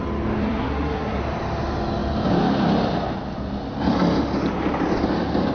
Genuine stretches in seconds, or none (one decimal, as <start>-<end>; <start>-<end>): 0.0-0.4; 1.2-5.5